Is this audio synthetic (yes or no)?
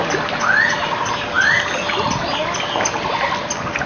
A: no